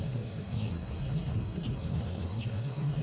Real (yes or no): no